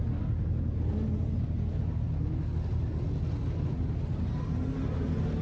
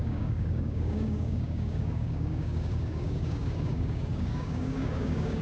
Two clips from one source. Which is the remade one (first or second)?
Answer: second